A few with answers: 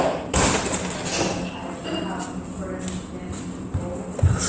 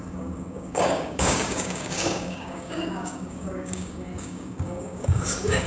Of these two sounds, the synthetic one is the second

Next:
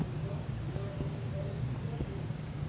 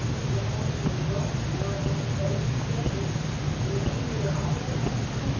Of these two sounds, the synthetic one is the first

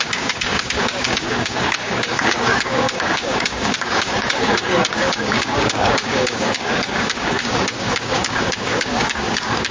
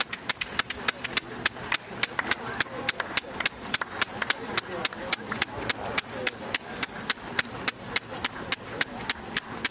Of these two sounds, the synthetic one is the first